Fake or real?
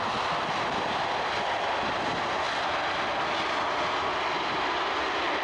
real